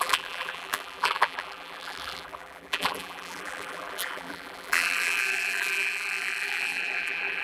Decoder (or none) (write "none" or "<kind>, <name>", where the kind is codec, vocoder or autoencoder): vocoder, BigVGAN v2